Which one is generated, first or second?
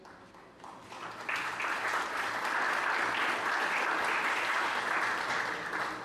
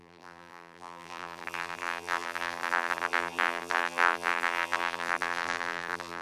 second